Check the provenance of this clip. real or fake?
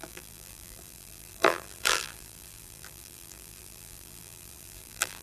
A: fake